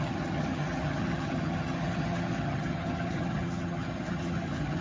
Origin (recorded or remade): remade